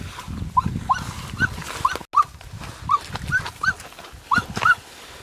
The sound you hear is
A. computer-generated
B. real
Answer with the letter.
B